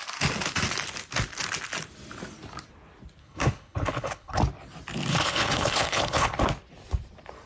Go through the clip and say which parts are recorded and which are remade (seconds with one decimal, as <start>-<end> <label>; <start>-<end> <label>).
0.0-3.2 recorded; 3.2-4.4 remade; 4.4-5.1 recorded; 5.1-6.4 remade; 6.4-7.5 recorded

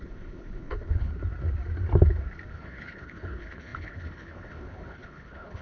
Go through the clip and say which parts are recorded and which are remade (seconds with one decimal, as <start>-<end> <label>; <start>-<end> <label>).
0.0-1.1 remade; 1.1-2.5 recorded; 2.5-5.6 remade

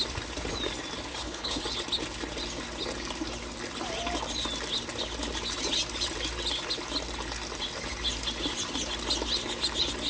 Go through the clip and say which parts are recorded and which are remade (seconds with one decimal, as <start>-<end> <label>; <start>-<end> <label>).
0.0-1.1 recorded; 1.1-1.6 remade; 1.6-10.1 recorded